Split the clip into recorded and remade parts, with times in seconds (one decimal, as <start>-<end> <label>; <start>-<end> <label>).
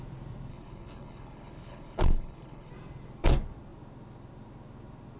0.0-0.5 recorded; 0.5-2.7 remade; 2.7-5.2 recorded